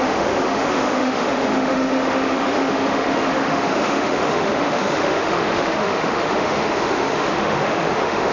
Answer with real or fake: fake